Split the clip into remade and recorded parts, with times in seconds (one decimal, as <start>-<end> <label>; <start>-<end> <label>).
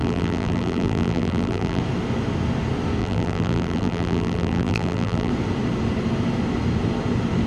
0.0-1.8 remade; 1.8-3.0 recorded; 3.0-5.3 remade; 5.3-7.5 recorded